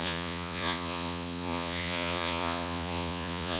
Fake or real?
fake